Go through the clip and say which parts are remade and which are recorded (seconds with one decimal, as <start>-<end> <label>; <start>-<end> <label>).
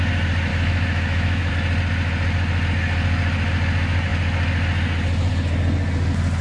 0.0-0.5 recorded; 0.5-1.5 remade; 1.5-6.4 recorded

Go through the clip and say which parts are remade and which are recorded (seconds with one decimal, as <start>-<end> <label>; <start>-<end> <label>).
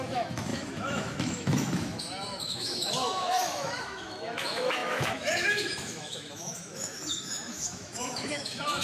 0.0-8.8 remade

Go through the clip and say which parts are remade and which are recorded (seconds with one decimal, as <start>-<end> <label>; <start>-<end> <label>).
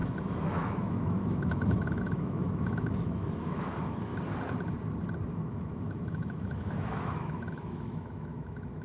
0.0-4.1 remade; 4.1-5.3 recorded; 5.3-8.8 remade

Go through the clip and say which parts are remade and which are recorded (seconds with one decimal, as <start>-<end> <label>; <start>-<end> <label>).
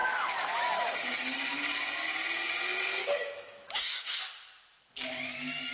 0.0-3.0 recorded; 3.0-4.2 remade; 4.2-5.7 recorded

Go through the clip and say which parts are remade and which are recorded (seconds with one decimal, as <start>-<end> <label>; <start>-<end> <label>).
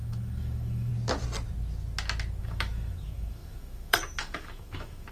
0.0-0.9 remade; 0.9-2.4 recorded; 2.4-5.1 remade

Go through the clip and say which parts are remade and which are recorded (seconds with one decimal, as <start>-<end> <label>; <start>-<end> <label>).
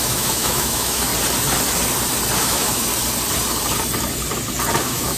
0.0-1.1 remade; 1.1-2.4 recorded; 2.4-2.9 remade; 2.9-4.8 recorded; 4.8-5.2 remade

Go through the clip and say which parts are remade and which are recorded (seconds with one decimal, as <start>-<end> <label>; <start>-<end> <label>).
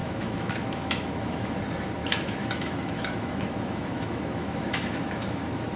0.0-1.6 remade; 1.6-2.0 recorded; 2.0-5.8 remade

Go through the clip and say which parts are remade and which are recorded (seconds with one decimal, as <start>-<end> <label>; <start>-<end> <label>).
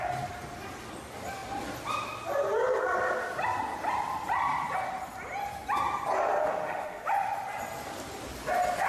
0.0-6.4 recorded; 6.4-7.1 remade; 7.1-8.9 recorded